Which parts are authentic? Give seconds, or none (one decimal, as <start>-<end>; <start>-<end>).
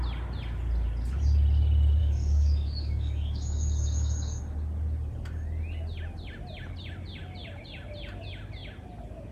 0.0-2.0; 4.4-9.3